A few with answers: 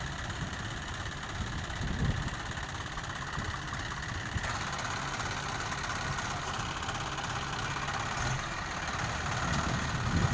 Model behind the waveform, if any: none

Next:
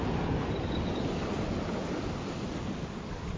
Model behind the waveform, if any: none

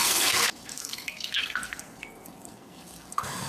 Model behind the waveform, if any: codec, SNAC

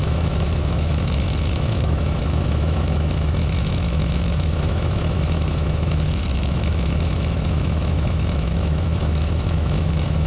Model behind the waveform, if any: autoencoder, DAC-VAE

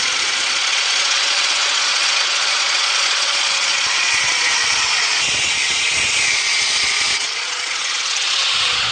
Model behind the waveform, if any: vocoder, Vocos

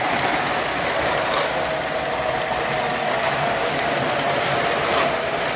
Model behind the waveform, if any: none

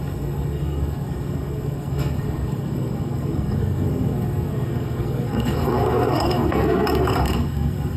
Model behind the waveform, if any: codec, SNAC